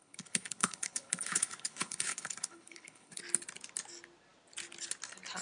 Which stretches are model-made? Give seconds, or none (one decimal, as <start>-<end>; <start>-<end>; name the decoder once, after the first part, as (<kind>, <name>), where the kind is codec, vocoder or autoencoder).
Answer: 0.0-3.2 (codec, HILCodec)